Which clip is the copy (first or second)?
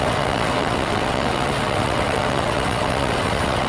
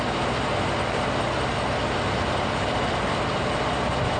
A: first